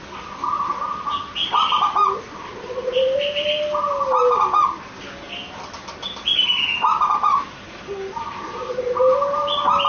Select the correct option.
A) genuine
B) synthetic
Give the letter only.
A